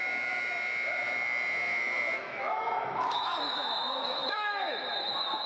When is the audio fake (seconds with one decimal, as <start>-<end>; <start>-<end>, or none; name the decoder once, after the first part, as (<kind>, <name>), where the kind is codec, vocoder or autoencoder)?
0.0-5.5 (autoencoder, DAC-VAE)